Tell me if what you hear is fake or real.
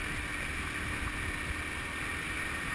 real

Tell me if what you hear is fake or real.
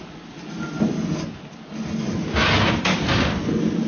real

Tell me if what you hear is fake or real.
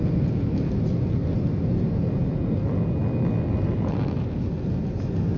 real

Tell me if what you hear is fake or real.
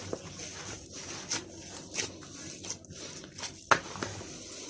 real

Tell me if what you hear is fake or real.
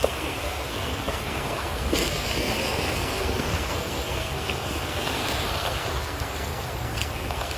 fake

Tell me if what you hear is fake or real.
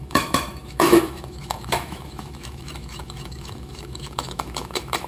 fake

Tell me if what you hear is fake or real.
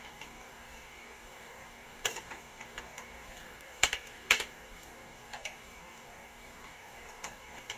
fake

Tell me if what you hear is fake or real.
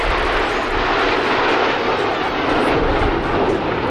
real